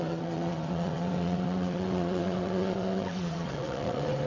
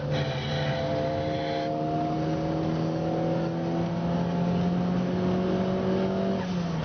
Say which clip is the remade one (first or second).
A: first